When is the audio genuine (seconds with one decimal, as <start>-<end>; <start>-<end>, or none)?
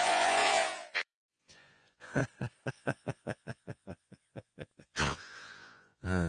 2.2-2.7